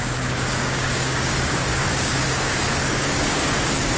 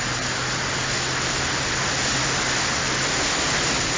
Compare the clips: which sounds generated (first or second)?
first